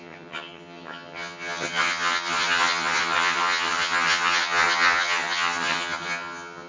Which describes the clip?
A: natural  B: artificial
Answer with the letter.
B